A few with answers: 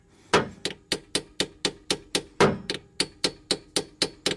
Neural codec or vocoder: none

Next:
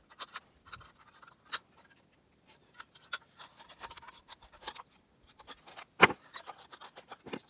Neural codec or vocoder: none